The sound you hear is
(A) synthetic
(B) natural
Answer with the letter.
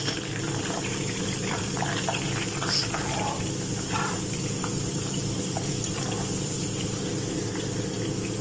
A